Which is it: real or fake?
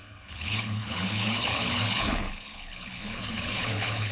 fake